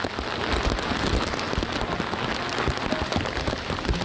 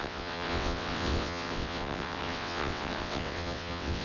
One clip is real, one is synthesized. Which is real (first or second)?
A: first